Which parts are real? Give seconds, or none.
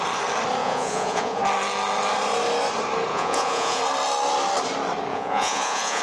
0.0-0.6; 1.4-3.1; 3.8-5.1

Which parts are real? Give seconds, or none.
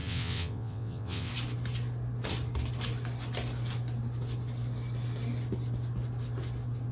1.3-6.9